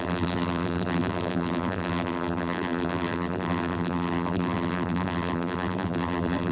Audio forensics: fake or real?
fake